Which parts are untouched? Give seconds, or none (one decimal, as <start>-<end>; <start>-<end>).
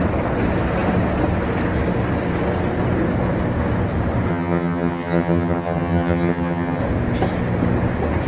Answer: 0.0-4.3; 6.8-8.3